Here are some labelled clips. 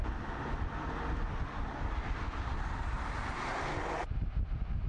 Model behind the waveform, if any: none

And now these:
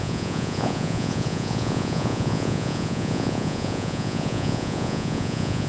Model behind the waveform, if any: vocoder, Vocos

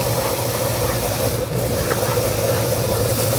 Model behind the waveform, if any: none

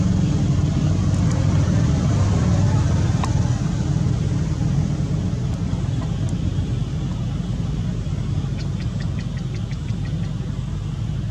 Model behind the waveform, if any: none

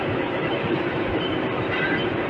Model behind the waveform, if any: none